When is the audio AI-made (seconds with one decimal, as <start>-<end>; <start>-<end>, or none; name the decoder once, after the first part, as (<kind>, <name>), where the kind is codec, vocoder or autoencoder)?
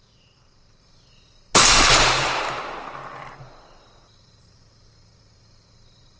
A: none